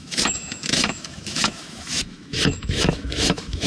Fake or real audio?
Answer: fake